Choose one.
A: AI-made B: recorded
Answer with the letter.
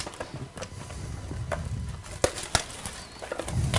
B